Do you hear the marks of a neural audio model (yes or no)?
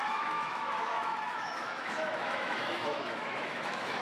yes